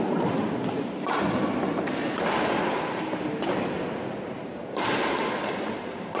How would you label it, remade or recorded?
recorded